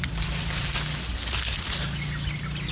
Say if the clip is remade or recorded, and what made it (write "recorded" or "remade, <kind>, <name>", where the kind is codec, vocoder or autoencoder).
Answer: recorded